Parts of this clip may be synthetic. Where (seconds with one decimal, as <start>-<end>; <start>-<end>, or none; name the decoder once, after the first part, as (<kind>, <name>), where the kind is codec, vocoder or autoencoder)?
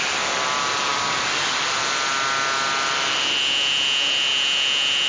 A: 0.9-1.6 (codec, DAC)